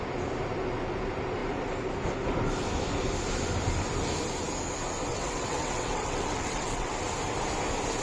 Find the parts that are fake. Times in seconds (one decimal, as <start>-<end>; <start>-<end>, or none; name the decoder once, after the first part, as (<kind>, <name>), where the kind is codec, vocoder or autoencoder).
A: 5.1-6.9 (vocoder, WaveNeXt)